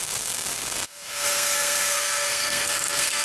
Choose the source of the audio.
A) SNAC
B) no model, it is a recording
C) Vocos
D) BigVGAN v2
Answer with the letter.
A